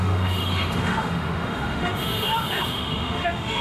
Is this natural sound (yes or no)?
no